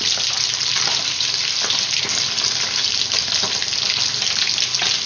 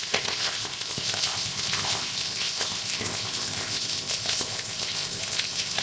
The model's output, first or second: second